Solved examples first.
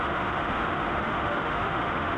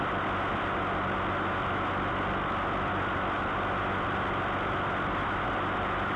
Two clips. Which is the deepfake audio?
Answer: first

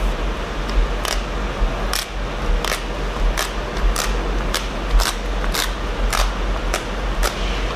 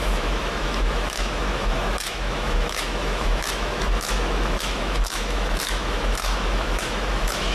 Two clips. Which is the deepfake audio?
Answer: second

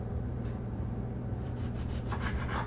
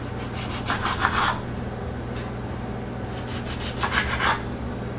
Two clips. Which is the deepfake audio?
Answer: first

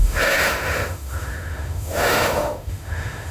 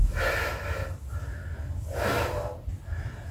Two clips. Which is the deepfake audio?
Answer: first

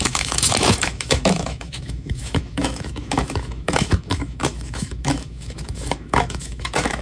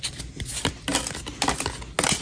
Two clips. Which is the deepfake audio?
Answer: first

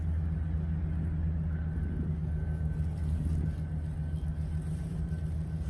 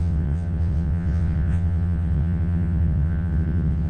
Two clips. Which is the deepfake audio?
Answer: second